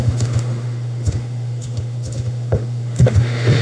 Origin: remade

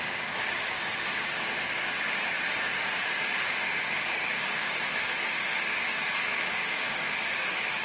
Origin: remade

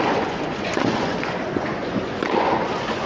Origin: remade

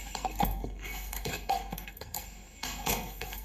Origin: remade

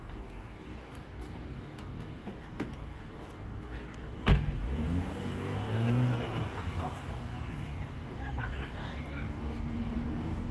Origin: remade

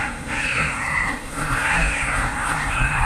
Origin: remade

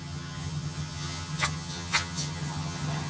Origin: remade